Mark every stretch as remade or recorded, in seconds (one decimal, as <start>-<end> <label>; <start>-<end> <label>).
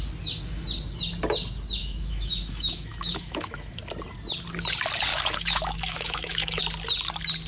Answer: 0.0-1.8 recorded; 1.8-3.8 remade; 3.8-5.1 recorded; 5.1-6.6 remade; 6.6-7.5 recorded